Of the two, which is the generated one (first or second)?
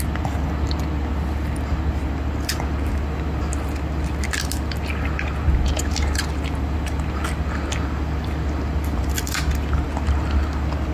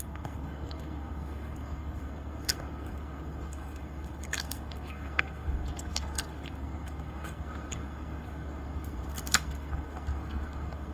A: second